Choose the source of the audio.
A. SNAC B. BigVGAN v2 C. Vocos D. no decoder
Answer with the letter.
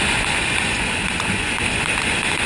C